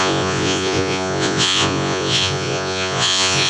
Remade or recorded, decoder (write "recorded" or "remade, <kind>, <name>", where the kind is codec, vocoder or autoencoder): remade, vocoder, Vocos